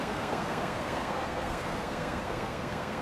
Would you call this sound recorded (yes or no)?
no